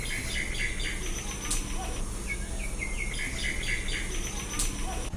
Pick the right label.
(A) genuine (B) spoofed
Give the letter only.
A